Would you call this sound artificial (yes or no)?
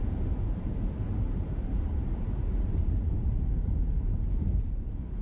yes